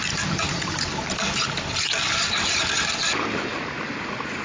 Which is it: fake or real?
real